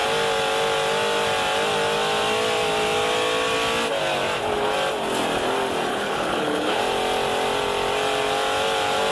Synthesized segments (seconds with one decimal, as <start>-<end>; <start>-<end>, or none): 5.9-6.8